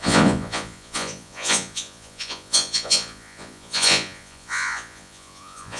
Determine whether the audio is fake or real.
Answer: fake